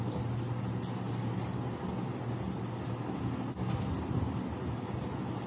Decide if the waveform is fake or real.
real